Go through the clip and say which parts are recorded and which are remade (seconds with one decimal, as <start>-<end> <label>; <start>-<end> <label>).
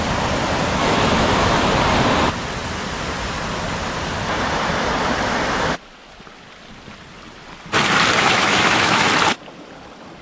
0.0-0.8 recorded; 0.8-1.7 remade; 1.7-8.2 recorded; 8.2-9.1 remade; 9.1-10.2 recorded